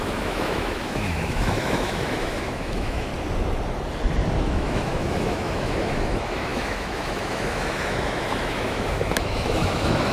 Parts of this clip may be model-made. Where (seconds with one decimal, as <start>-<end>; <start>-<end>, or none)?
0.0-3.1; 4.4-10.1